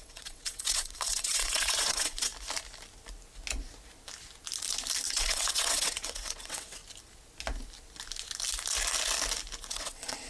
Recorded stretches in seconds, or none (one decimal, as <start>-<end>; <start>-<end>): 2.3-5.1; 6.8-9.7